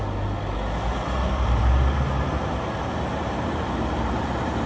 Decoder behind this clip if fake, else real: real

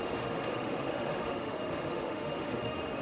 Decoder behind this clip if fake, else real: fake, autoencoder, DAC-VAE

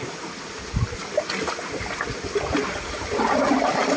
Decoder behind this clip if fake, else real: real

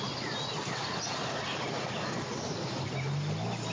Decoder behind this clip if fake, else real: real